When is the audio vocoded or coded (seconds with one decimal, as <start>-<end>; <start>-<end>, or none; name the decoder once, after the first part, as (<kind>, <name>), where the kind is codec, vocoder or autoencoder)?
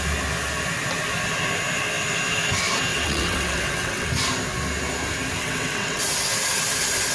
2.9-4.1 (vocoder, WaveNeXt); 5.4-6.0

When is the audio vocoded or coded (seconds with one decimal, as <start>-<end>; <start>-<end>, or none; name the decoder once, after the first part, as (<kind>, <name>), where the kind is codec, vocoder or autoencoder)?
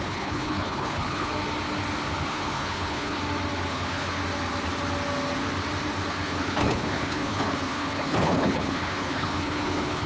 0.0-1.3 (codec, HILCodec); 2.2-3.2; 3.7-4.2; 6.1-10.1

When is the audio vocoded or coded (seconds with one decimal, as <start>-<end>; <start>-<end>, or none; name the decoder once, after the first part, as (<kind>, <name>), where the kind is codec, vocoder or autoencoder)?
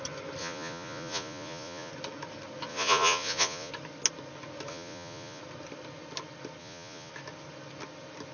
0.4-1.9 (vocoder, Vocos); 2.7-3.7; 4.7-5.4; 6.6-7.1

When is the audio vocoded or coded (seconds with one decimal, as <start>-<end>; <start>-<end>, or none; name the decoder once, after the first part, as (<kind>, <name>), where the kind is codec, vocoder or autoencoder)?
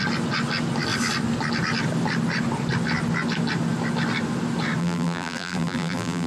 4.8-6.3 (vocoder, BigVGAN v2)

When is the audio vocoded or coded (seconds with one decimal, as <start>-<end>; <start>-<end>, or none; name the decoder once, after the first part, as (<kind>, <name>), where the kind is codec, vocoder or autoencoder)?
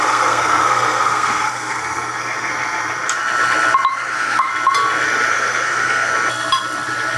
0.0-2.5 (codec, SNAC); 3.9-4.5; 5.3-6.1